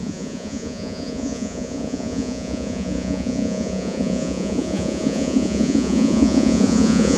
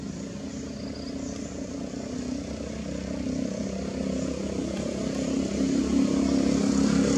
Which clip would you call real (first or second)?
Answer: second